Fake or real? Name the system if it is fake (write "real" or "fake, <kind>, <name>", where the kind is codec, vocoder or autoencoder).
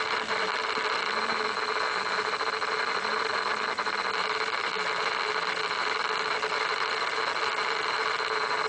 real